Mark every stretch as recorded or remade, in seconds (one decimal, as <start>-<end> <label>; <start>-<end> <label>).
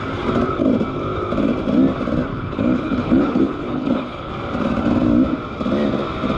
0.0-2.3 recorded; 2.3-4.3 remade; 4.3-6.4 recorded